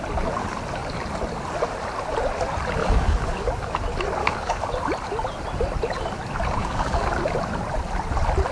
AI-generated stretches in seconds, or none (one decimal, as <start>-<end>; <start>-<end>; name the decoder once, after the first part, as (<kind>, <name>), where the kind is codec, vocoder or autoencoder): 2.8-3.5 (codec, DAC); 4.2-4.7; 6.6-7.1

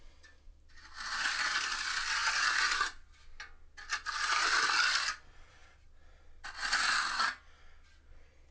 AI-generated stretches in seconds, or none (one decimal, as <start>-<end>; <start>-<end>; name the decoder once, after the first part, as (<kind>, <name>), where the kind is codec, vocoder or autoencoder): none

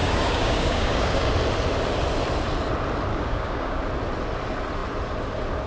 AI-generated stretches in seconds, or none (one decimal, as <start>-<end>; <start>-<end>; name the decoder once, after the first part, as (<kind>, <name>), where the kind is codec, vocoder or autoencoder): 0.0-1.3 (codec, DAC); 3.1-3.8

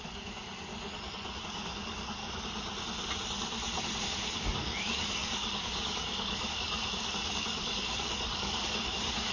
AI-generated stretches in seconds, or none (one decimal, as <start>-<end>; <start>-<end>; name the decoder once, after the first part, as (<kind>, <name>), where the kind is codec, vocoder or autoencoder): 0.0-0.7 (codec, DAC); 1.4-2.2; 4.0-9.3

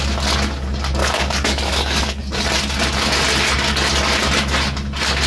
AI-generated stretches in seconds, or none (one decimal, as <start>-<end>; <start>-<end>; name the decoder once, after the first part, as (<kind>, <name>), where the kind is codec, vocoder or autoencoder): 1.0-2.2 (codec, DAC)

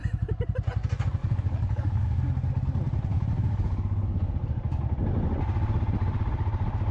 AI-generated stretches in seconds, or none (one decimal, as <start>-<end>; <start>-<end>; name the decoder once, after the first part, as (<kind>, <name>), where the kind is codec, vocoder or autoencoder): 1.2-2.2 (codec, DAC); 3.1-4.3

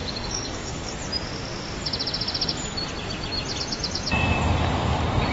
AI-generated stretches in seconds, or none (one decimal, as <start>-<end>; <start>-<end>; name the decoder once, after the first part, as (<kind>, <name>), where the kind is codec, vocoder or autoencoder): 0.0-0.9 (codec, DAC)